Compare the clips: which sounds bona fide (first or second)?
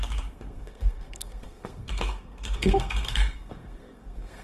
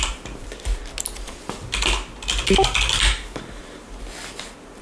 second